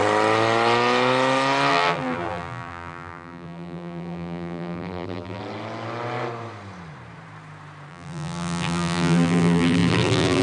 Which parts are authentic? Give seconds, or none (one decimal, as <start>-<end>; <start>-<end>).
0.0-1.7; 5.4-7.9